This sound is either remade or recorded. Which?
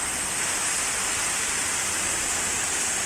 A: recorded